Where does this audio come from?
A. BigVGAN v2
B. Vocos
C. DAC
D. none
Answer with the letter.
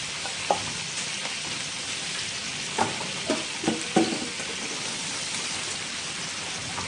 D